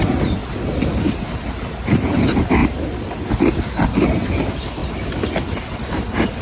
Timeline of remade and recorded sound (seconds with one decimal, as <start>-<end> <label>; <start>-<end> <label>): 0.0-2.6 recorded; 2.6-3.3 remade; 3.3-6.4 recorded